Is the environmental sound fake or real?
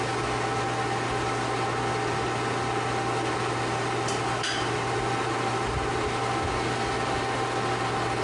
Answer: real